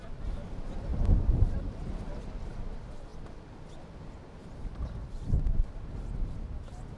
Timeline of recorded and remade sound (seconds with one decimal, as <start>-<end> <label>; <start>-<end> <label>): 0.0-0.9 recorded; 0.9-1.9 remade; 1.9-4.4 recorded; 4.4-5.8 remade; 5.8-7.0 recorded